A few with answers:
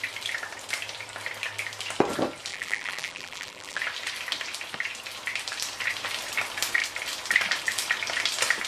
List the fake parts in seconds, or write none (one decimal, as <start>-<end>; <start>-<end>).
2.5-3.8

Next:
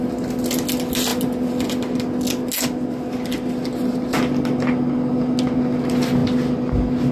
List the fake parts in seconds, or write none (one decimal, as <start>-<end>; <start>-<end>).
none

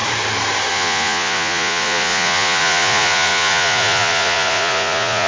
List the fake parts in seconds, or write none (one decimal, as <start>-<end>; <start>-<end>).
0.7-5.3

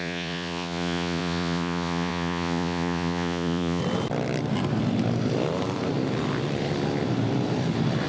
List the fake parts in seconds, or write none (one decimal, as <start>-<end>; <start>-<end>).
0.0-3.8

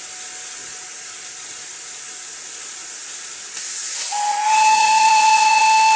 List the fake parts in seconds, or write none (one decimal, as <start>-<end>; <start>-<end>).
4.3-5.6